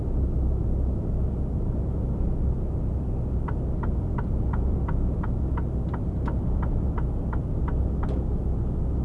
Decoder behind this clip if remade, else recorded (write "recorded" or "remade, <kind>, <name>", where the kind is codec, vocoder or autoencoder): recorded